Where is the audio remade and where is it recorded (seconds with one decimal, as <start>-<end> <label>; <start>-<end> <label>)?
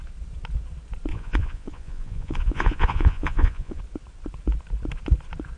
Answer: 0.0-1.1 recorded; 1.1-3.8 remade; 3.8-5.6 recorded